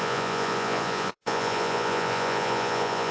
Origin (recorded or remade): remade